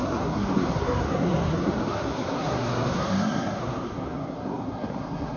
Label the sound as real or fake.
fake